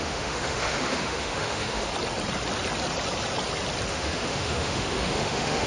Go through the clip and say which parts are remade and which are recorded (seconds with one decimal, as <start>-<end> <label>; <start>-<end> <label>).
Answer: 0.0-1.9 remade; 1.9-3.9 recorded; 3.9-5.7 remade